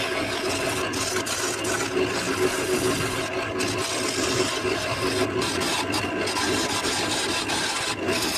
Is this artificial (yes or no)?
no